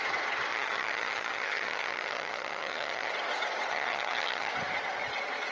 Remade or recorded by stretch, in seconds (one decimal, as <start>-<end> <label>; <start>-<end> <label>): 0.0-0.5 recorded; 0.5-3.1 remade; 3.1-3.7 recorded; 3.7-4.5 remade; 4.5-5.5 recorded